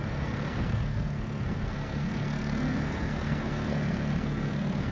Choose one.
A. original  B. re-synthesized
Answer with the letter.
B